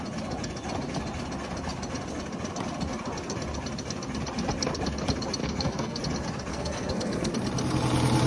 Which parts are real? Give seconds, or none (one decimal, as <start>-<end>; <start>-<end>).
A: 0.0-5.4; 6.0-6.5; 7.3-8.3